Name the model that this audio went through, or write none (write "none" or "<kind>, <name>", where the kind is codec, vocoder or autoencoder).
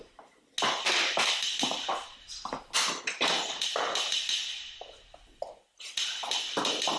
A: none